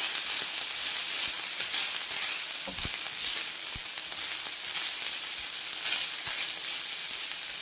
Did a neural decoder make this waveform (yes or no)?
no